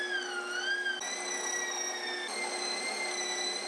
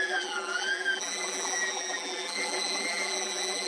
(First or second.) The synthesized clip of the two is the second